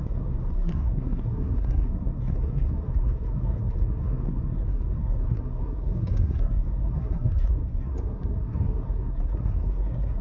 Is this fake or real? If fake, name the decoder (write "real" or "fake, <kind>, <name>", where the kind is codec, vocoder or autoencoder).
fake, codec, SNAC